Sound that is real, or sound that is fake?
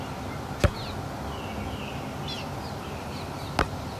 real